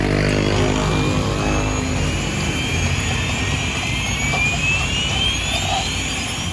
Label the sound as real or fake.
real